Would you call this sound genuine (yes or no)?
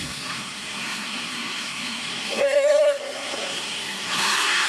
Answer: no